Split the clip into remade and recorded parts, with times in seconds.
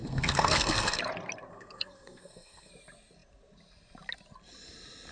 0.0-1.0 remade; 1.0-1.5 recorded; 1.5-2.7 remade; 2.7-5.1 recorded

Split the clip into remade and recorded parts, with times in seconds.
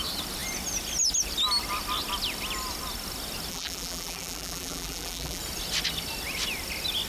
0.0-3.5 recorded; 3.5-5.4 remade; 5.4-7.1 recorded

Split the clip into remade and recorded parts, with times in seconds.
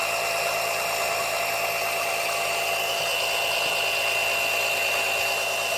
0.0-1.4 remade; 1.4-5.8 recorded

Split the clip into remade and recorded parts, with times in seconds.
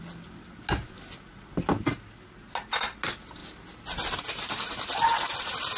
0.0-5.8 recorded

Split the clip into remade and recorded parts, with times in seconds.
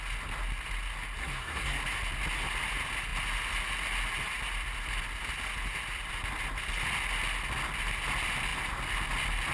0.0-1.2 recorded; 1.2-1.8 remade; 1.8-9.5 recorded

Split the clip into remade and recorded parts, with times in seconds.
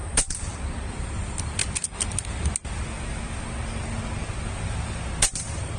0.0-0.6 remade; 0.6-5.8 recorded